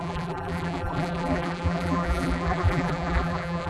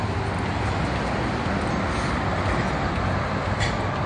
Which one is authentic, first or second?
second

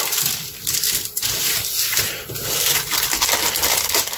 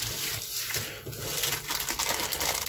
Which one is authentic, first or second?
second